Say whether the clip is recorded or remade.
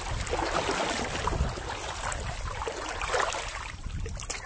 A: recorded